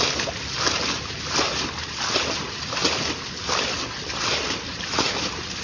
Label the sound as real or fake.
real